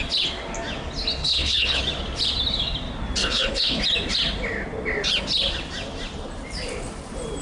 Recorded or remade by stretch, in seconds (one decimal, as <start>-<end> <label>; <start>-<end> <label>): 0.0-1.2 recorded; 1.2-1.8 remade; 1.8-3.2 recorded; 3.2-3.8 remade; 3.8-7.4 recorded